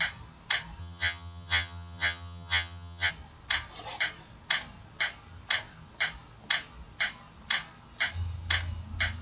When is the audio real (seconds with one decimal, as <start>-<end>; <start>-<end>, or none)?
0.0-0.8; 3.1-9.2

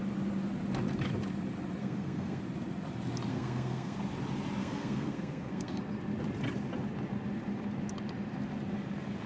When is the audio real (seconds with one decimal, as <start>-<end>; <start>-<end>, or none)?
0.0-1.8; 2.4-3.3; 4.0-4.6; 5.8-9.3

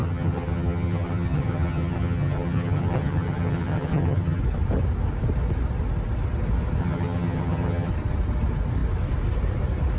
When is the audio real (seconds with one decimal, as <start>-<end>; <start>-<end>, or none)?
4.4-6.8; 7.9-10.0

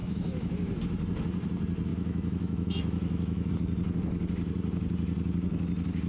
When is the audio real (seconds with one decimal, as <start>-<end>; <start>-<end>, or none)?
0.8-1.9; 3.5-6.1

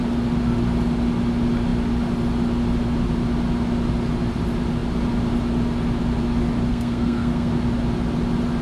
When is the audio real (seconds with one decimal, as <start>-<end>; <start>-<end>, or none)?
0.0-6.7; 7.5-8.6

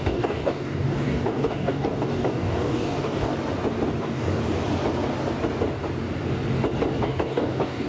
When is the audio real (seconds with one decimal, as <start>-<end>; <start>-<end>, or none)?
3.3-4.0; 4.4-7.0

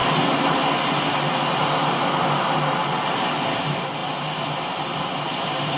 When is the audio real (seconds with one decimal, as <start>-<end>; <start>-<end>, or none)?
0.0-5.8